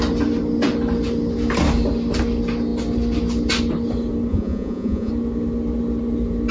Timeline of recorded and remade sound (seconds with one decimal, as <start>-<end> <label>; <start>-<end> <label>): 0.0-4.3 recorded; 4.3-5.1 remade; 5.1-6.5 recorded